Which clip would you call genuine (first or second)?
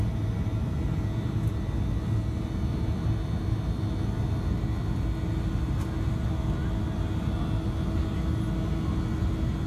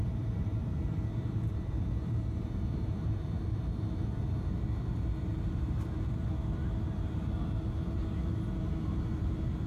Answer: first